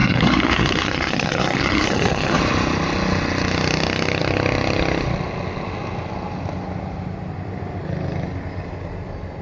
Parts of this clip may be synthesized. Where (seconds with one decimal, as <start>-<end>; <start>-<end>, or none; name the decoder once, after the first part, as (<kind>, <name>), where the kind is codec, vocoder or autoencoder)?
0.0-2.4 (codec, SNAC)